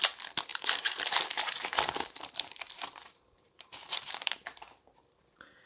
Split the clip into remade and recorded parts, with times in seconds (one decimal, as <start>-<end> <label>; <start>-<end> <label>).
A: 0.0-0.5 recorded; 0.5-2.6 remade; 2.6-3.0 recorded; 3.0-5.2 remade; 5.2-5.7 recorded